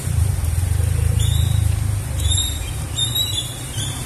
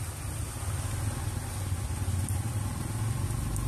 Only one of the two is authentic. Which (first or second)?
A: second